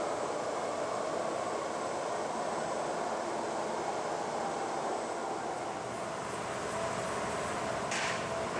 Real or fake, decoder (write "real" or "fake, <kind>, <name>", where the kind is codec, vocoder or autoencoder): real